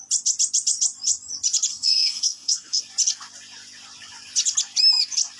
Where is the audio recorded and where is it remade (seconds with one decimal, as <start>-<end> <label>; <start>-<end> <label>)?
0.0-1.7 recorded; 1.7-2.8 remade; 2.8-5.4 recorded